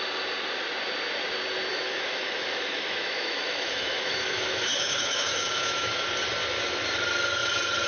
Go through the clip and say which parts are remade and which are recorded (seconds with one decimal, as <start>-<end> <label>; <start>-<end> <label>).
0.0-1.7 recorded; 1.7-6.1 remade; 6.1-7.9 recorded